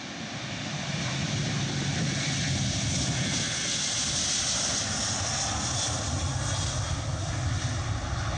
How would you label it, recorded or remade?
recorded